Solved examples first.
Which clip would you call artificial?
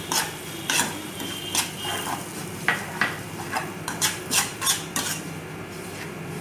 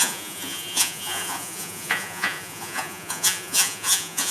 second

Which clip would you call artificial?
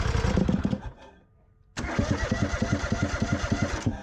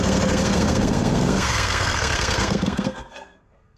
second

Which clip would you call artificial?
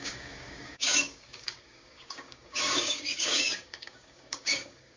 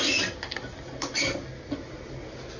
first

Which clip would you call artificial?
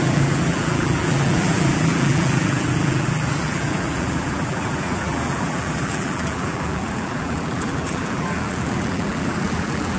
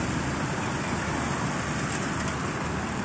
first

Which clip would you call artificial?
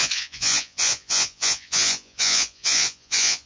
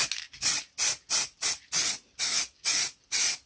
first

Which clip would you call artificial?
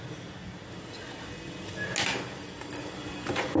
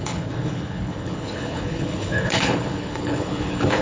second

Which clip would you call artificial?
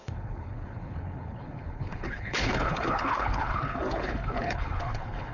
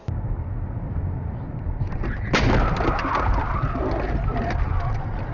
first